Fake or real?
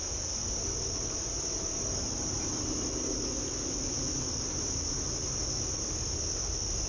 real